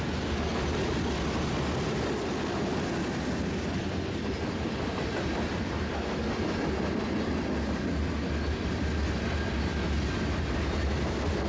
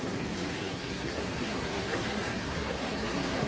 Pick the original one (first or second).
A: first